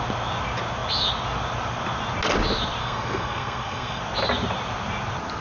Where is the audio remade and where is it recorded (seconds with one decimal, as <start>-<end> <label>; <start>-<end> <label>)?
0.0-2.8 recorded; 2.8-4.0 remade; 4.0-5.4 recorded